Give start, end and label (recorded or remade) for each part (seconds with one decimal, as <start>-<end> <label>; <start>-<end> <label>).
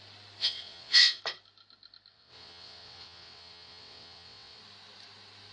0.0-0.4 recorded; 0.4-1.2 remade; 1.2-2.1 recorded; 2.1-4.6 remade; 4.6-5.5 recorded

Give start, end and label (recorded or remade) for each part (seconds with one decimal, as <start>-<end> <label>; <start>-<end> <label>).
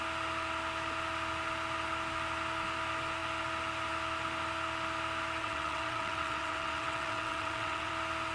0.0-5.4 recorded; 5.4-7.9 remade; 7.9-8.3 recorded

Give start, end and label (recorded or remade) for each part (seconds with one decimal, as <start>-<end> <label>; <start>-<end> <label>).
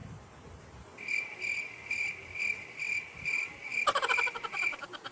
0.0-5.1 recorded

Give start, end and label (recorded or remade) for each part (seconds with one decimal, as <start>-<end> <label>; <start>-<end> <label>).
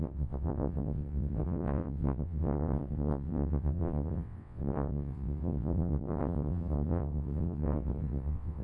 0.0-8.6 remade